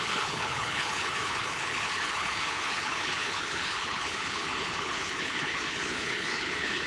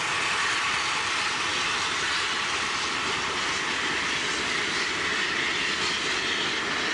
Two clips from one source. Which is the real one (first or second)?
second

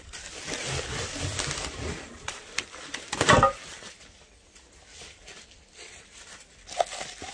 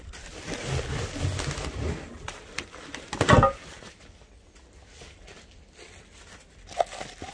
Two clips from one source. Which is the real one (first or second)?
second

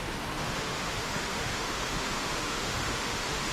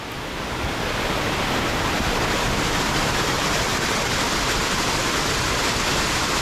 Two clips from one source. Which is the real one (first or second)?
second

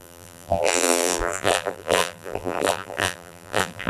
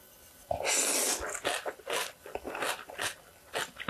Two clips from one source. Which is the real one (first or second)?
second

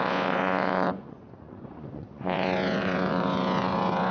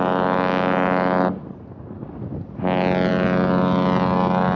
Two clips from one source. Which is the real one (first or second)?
second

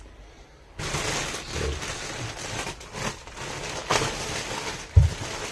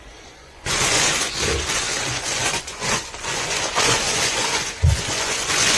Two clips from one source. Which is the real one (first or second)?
first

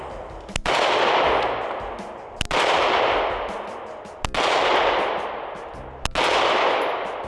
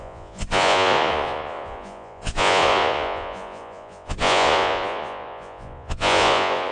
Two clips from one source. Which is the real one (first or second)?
first